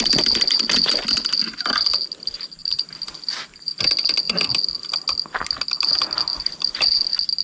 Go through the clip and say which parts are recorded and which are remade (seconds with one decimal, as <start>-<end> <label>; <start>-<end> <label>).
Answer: 0.0-6.3 recorded; 6.3-7.0 remade; 7.0-7.4 recorded